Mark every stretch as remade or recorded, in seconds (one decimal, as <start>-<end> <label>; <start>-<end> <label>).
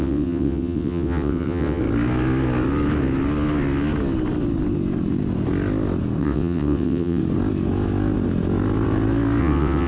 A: 0.0-1.8 remade; 1.8-6.2 recorded; 6.2-7.2 remade; 7.2-9.4 recorded; 9.4-9.9 remade